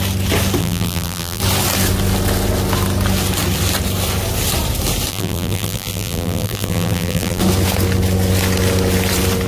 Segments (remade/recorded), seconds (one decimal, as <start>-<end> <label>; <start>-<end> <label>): 0.0-0.6 recorded; 0.6-1.4 remade; 1.4-5.1 recorded; 5.1-7.4 remade; 7.4-9.5 recorded